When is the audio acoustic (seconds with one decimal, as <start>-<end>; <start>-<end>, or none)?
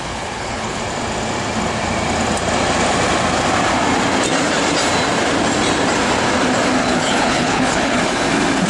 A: 0.8-6.8; 8.0-8.7